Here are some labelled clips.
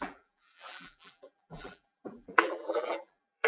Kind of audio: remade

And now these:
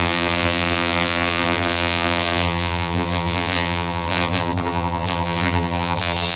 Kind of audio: remade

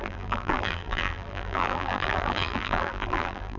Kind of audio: remade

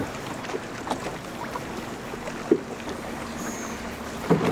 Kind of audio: recorded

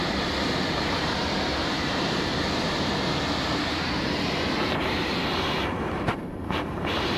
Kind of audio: remade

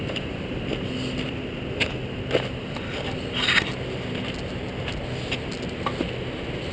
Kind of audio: recorded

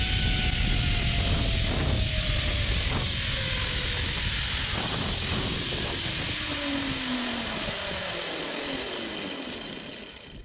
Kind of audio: recorded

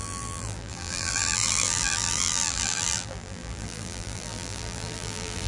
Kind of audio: remade